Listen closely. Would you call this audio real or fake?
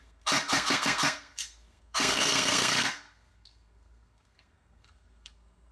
fake